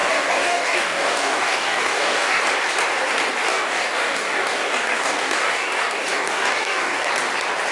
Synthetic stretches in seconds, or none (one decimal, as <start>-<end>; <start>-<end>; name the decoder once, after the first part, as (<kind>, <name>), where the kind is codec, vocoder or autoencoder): 0.0-2.4 (codec, DAC); 3.5-7.1